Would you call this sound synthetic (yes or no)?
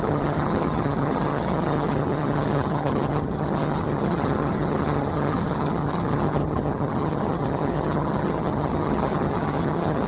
yes